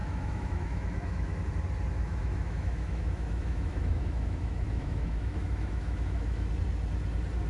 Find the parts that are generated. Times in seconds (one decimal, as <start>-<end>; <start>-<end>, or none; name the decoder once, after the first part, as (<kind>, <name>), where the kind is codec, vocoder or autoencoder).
0.0-1.5 (autoencoder, DAC-VAE); 2.0-6.5